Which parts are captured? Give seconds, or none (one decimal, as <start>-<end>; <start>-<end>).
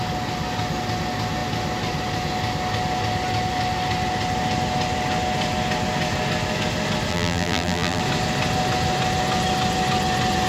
0.0-7.1; 8.0-10.5